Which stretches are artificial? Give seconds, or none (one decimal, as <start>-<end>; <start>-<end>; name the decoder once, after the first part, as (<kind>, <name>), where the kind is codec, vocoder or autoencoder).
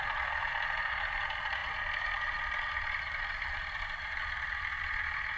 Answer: none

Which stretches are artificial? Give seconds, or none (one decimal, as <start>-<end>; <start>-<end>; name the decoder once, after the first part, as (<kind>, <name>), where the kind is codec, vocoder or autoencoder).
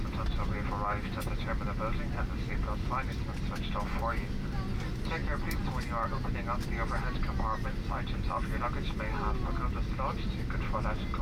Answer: none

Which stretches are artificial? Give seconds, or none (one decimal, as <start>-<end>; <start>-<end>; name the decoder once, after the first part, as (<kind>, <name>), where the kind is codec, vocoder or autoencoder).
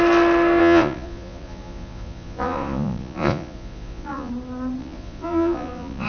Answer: 0.6-4.3 (vocoder, Vocos); 4.8-6.1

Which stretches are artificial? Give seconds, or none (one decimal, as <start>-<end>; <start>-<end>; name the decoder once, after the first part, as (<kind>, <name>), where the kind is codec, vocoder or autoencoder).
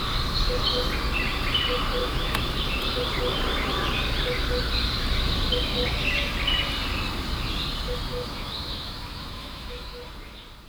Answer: 2.0-2.5 (autoencoder, DAC-VAE); 8.1-10.0